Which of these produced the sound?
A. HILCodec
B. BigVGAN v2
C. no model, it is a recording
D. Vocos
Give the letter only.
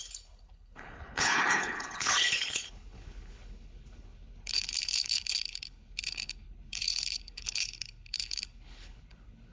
A